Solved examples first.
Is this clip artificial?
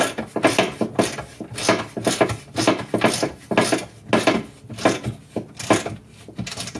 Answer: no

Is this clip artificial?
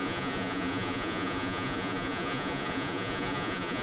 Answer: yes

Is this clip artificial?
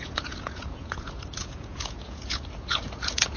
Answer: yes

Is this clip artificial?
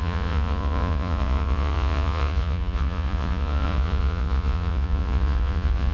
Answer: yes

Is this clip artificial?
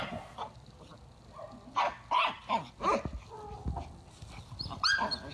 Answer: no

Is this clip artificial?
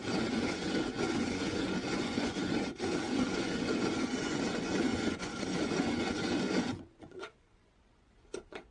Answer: yes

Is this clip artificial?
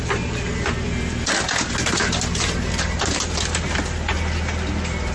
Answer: no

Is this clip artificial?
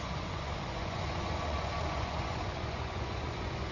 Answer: yes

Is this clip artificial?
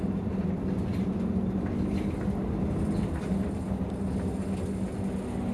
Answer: no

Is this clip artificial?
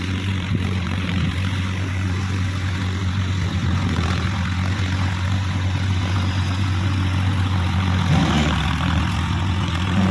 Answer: yes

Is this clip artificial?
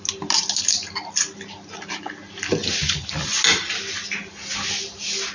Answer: no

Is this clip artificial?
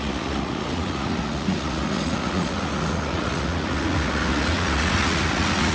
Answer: yes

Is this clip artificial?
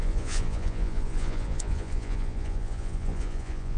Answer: yes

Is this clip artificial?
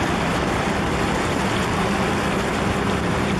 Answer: no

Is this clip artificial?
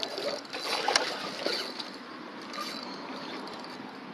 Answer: no